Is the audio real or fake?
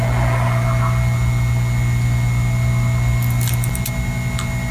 real